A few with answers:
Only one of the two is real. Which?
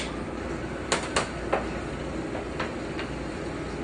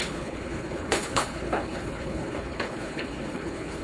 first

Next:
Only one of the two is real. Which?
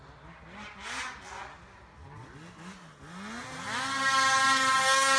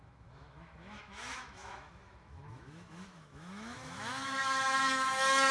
first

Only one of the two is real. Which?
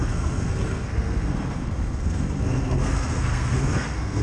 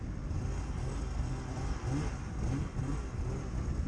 second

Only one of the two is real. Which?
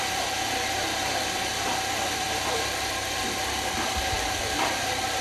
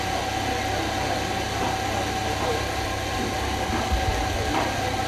second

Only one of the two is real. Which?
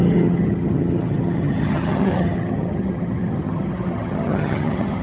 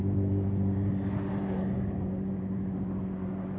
second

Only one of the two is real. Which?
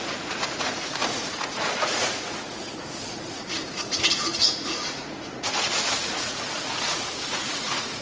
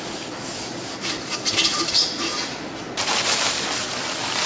second